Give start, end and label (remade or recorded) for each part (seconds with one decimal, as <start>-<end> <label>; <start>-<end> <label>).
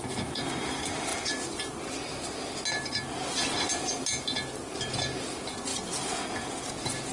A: 0.0-7.1 recorded